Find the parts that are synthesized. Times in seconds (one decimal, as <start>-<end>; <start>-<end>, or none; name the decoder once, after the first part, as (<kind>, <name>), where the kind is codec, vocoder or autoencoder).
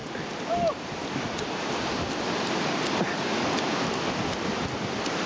none